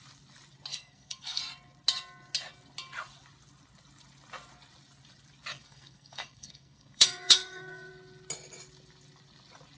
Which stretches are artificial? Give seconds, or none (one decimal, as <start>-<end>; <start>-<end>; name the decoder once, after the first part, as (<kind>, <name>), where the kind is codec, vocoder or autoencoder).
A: 0.7-1.4 (codec, SNAC); 5.5-7.9